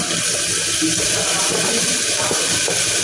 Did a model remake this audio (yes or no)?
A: no